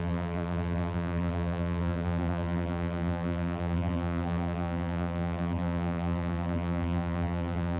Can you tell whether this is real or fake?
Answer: fake